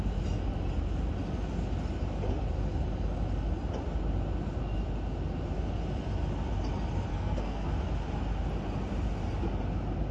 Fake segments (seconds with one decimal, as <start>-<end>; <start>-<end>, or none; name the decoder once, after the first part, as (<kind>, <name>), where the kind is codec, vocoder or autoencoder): 7.1-7.7 (codec, SNAC)